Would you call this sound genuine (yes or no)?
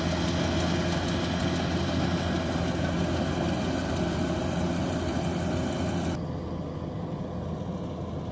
yes